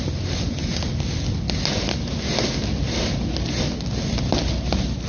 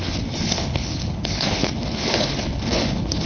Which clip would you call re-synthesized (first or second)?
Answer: second